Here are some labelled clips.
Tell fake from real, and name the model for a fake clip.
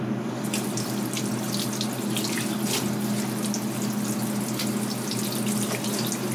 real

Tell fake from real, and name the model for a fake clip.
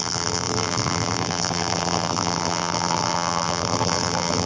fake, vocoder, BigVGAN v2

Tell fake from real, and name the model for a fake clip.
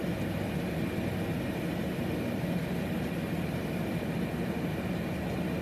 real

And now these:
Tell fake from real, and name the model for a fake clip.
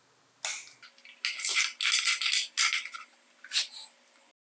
real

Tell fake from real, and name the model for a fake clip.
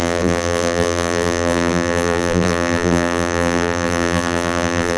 fake, vocoder, BigVGAN v2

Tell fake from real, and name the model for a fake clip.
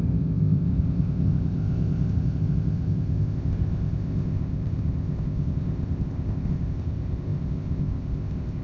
fake, codec, ZipCodec